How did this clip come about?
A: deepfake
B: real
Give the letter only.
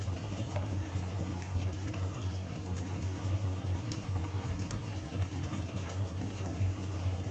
A